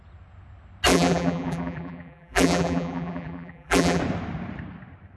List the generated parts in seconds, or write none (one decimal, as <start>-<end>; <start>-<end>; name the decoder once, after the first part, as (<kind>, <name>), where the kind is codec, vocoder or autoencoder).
0.9-4.0 (vocoder, BigVGAN v2)